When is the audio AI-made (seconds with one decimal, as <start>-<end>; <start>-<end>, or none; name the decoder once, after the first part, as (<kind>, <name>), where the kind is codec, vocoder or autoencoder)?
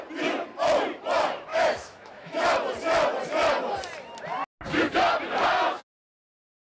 1.5-2.4 (autoencoder, DAC-VAE)